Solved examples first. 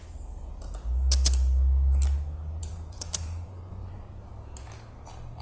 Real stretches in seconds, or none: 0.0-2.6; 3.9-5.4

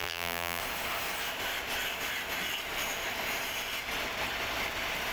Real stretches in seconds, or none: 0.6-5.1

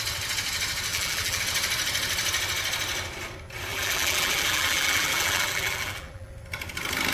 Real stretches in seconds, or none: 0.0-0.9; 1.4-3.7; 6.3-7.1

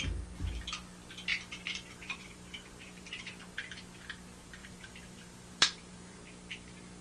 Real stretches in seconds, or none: 0.0-1.3; 3.3-4.6; 6.2-7.0

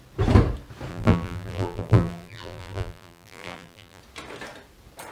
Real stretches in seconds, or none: 0.0-0.9; 4.0-5.1

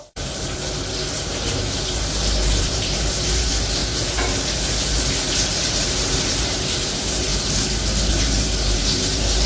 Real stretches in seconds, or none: 3.8-5.7; 7.3-8.1

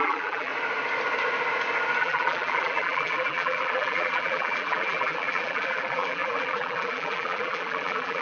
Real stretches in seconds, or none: 0.5-2.0